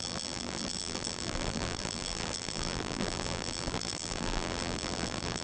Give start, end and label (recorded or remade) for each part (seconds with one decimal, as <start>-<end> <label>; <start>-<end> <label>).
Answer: 0.0-5.4 remade